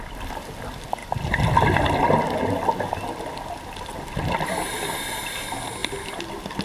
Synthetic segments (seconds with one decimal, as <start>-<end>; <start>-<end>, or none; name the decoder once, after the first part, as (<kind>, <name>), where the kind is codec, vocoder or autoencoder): none